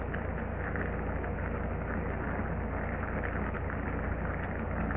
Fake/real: real